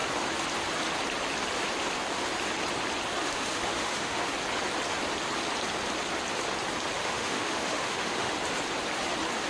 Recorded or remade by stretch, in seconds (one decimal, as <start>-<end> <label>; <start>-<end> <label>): 0.0-3.2 recorded; 3.2-4.3 remade; 4.3-7.0 recorded; 7.0-8.3 remade; 8.3-9.5 recorded